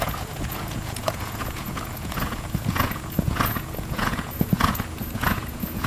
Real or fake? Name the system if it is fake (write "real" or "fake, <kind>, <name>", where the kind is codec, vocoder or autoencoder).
fake, vocoder, Vocos